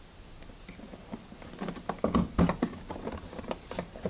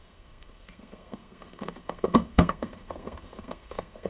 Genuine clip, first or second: first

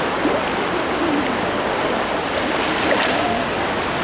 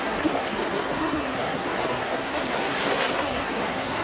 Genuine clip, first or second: first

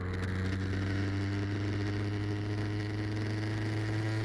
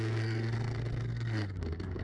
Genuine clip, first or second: first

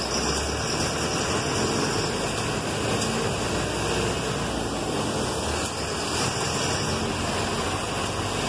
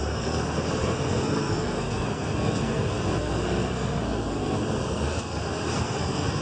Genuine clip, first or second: first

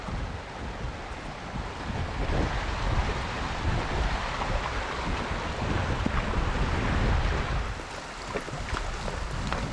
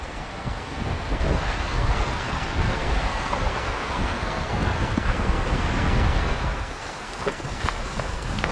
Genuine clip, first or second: first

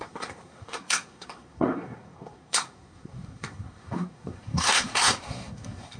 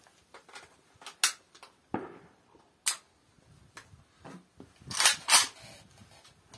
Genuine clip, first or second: second